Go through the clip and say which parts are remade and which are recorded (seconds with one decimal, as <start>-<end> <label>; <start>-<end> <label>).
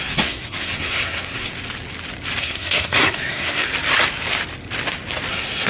0.0-1.5 remade; 1.5-2.4 recorded; 2.4-3.7 remade; 3.7-5.3 recorded; 5.3-5.7 remade